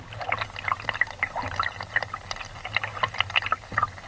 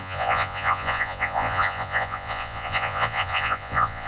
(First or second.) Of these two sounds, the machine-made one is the second